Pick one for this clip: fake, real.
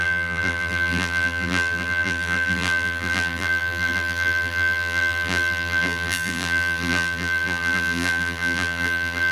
fake